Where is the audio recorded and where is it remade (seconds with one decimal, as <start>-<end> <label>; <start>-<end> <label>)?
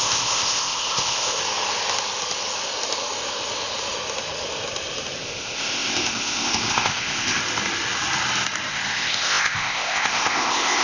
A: 0.0-1.4 remade; 1.4-5.2 recorded; 5.2-7.4 remade; 7.4-8.7 recorded; 8.7-10.8 remade